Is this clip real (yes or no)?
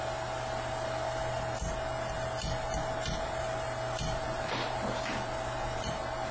yes